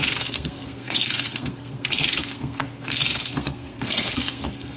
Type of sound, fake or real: fake